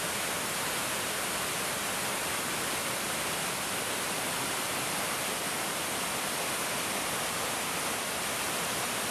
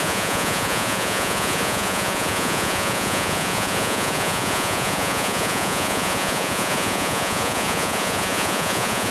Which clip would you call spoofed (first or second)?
second